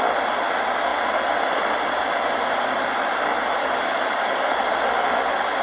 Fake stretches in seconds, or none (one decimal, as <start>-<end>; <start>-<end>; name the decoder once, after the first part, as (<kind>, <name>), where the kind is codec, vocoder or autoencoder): 3.6-4.6 (codec, DAC)